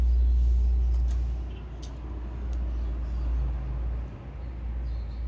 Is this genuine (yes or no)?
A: yes